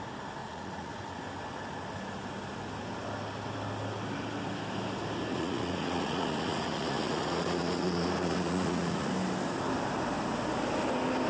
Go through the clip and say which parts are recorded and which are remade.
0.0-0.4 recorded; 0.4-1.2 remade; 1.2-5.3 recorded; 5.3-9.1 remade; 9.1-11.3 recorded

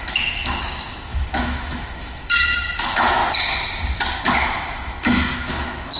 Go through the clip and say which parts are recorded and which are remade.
0.0-3.2 remade; 3.2-4.2 recorded; 4.2-6.0 remade